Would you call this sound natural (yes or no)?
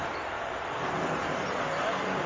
yes